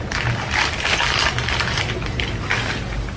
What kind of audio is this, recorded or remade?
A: recorded